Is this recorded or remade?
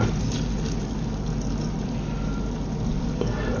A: recorded